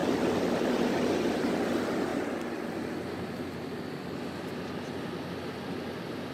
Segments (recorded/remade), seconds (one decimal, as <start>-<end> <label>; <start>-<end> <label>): 0.0-1.5 remade; 1.5-6.3 recorded